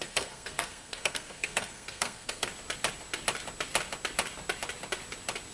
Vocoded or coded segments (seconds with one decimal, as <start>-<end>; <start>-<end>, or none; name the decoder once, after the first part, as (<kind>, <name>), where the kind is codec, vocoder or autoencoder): 0.0-2.5 (codec, SNAC)

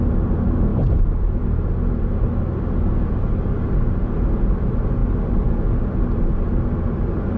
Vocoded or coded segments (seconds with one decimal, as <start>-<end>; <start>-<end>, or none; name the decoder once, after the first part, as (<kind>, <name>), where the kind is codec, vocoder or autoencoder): 0.7-1.4 (vocoder, BigVGAN v2); 5.0-7.4

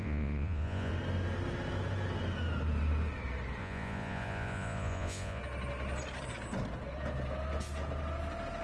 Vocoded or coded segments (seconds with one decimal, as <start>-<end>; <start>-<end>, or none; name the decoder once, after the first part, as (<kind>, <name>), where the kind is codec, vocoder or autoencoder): 0.0-0.9 (vocoder, Vocos); 3.6-5.4